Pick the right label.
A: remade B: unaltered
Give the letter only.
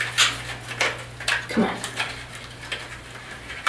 B